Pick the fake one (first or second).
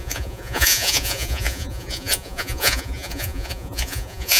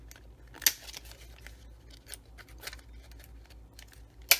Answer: first